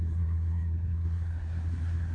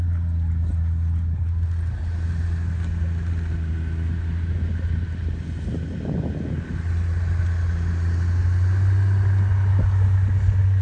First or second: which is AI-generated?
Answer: first